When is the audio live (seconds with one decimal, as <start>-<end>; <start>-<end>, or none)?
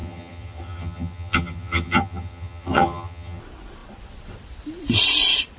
3.4-5.6